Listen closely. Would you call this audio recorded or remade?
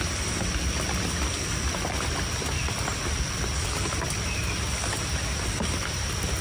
recorded